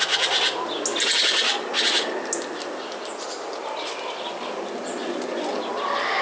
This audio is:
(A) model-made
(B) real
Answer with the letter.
B